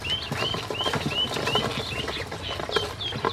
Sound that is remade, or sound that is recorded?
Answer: recorded